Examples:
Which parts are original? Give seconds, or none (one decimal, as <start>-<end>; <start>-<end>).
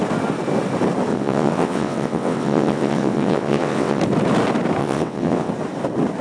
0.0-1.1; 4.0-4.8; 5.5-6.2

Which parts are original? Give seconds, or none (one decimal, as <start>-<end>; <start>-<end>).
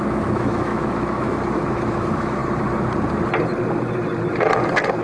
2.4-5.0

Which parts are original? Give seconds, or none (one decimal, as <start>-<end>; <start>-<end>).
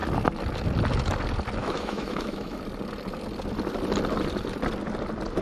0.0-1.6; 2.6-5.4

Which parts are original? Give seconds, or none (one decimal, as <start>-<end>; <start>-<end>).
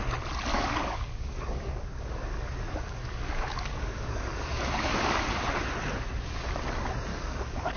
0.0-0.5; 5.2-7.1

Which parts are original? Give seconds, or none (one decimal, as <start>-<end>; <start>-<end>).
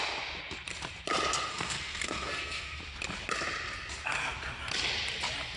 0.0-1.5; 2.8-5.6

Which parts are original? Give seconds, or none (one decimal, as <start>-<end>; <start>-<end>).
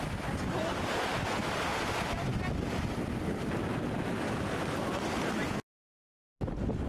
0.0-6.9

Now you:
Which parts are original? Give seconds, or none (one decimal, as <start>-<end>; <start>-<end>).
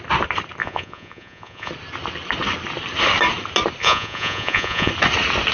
0.0-0.6; 1.7-3.8; 4.9-5.5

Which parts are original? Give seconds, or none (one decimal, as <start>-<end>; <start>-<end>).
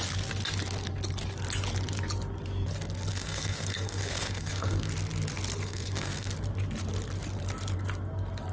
0.0-3.1; 4.9-5.6; 6.3-8.5